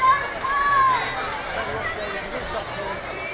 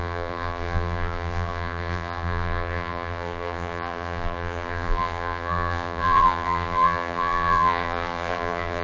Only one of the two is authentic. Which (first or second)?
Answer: first